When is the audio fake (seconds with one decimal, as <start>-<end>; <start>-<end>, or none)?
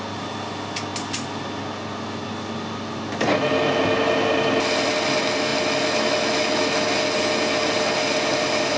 none